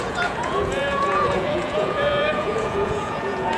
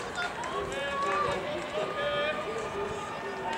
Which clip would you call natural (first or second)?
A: second